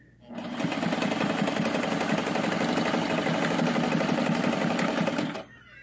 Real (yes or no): yes